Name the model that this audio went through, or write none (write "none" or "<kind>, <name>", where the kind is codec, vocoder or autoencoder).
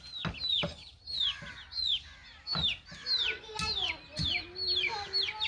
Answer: none